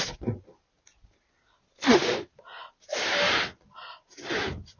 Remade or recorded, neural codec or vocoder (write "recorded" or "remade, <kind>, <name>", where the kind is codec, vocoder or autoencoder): recorded